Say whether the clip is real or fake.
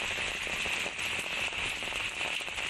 real